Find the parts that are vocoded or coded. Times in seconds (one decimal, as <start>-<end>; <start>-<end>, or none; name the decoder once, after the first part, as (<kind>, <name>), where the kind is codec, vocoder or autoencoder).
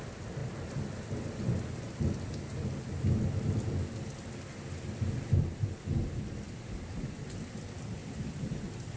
none